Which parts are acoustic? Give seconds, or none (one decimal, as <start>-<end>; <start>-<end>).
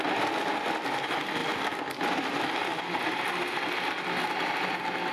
0.0-5.1